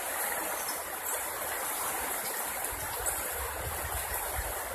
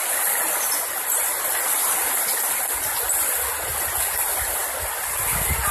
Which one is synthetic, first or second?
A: first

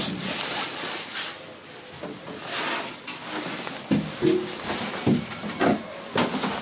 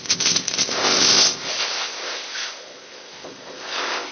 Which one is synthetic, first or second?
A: second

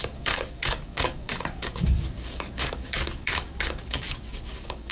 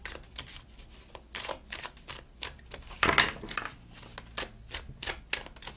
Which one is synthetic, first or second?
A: first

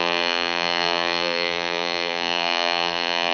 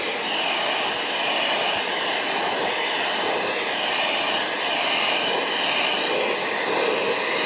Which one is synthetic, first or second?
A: first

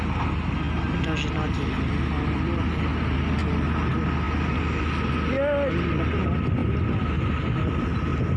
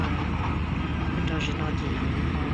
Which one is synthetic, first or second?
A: second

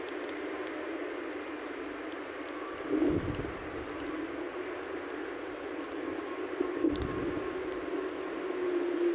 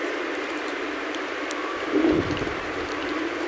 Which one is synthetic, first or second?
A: second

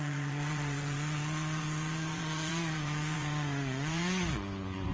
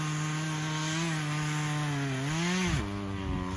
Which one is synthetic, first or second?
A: first